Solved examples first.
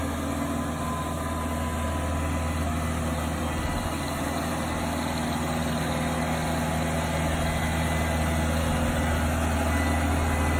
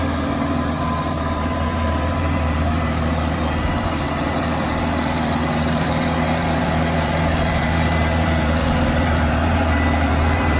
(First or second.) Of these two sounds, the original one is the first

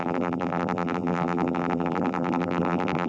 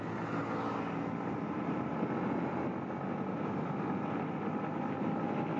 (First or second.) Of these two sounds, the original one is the second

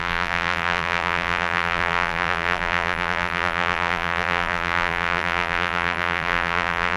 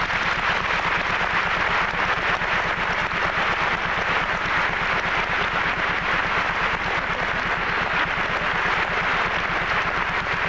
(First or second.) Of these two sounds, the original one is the second